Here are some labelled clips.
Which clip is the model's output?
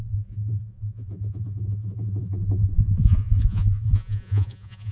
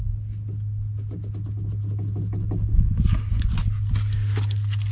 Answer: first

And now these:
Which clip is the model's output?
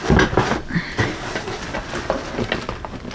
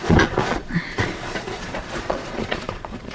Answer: second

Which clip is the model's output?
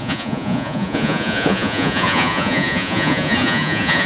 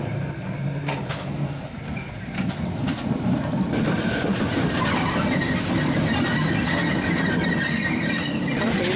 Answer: first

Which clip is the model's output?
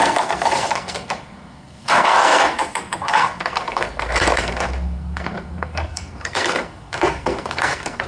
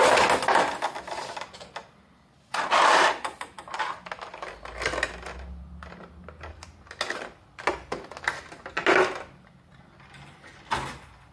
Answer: first